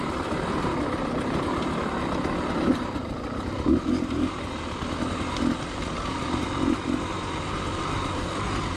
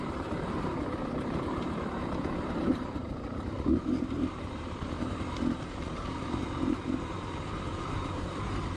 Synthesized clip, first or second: second